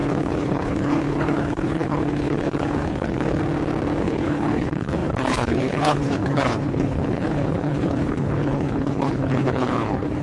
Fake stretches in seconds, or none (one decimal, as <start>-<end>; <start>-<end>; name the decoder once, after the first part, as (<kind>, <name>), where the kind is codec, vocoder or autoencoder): 0.0-3.4 (codec, HILCodec); 4.0-10.2